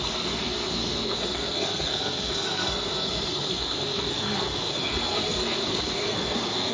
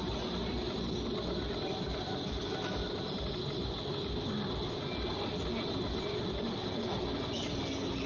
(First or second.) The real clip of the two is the second